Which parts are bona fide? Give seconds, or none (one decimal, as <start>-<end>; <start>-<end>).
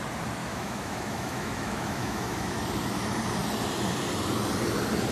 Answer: 0.0-0.4; 2.6-5.1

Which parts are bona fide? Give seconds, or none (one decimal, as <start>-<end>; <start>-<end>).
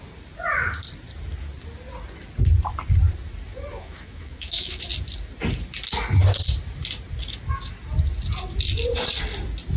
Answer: 0.0-3.7; 4.8-9.8